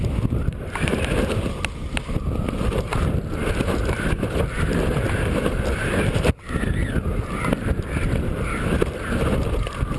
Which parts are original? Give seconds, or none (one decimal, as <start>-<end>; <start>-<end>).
6.8-7.5